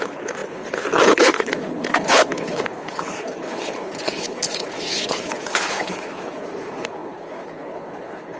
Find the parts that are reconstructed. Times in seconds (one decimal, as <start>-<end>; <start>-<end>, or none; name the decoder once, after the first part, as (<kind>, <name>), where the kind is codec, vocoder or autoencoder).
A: 0.0-8.4 (codec, HILCodec)